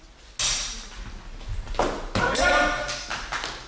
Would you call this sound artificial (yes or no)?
no